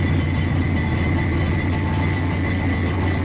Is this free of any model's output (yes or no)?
yes